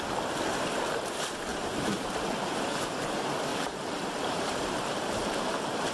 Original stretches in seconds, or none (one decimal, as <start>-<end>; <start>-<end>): 0.0-1.5; 2.2-3.5; 5.5-5.9